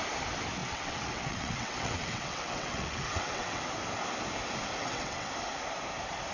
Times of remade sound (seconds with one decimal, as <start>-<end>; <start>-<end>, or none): 0.6-3.6; 4.8-5.3